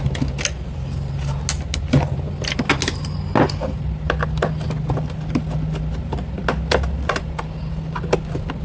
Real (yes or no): yes